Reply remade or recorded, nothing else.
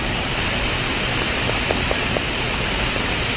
recorded